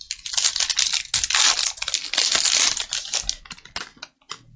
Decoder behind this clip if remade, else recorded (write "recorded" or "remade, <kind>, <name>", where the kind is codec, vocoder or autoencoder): recorded